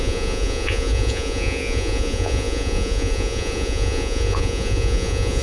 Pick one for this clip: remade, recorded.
remade